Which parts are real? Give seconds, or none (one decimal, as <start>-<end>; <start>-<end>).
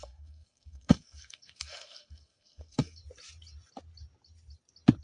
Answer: 3.0-5.0